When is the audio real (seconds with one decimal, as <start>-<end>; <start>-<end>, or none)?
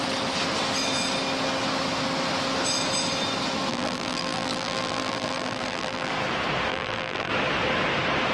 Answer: 0.0-3.7; 6.1-6.7; 7.3-8.3